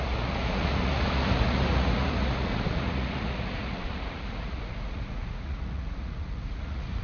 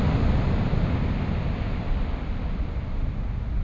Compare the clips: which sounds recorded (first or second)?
second